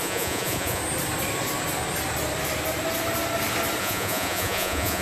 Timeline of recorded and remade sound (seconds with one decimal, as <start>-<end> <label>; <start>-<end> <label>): 0.0-0.8 remade; 0.8-3.8 recorded; 3.8-5.0 remade